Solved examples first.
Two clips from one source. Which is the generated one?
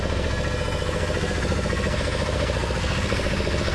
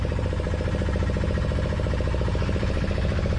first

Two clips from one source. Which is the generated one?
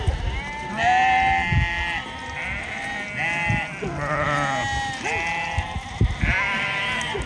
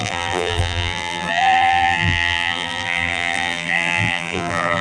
second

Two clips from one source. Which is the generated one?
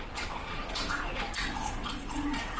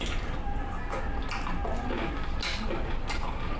first